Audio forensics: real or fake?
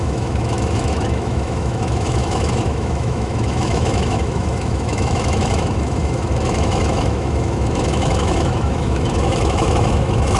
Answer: fake